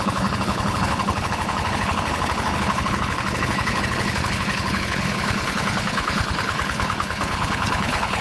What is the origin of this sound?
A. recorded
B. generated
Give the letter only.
B